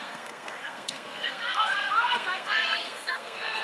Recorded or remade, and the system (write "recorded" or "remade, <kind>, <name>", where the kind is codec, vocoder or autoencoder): remade, codec, SNAC